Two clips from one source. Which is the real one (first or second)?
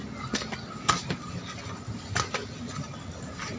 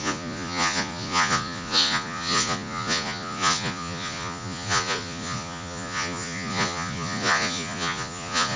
first